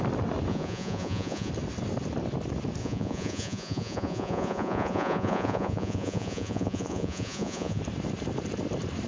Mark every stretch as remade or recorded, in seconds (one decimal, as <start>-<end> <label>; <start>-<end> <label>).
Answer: 0.0-0.5 recorded; 0.5-1.5 remade; 1.5-2.8 recorded; 2.8-7.8 remade; 7.8-9.1 recorded